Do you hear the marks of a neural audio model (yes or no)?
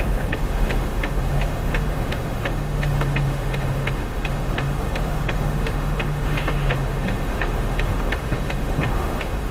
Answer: yes